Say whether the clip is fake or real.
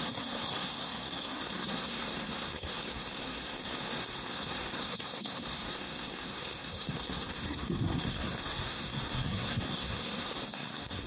fake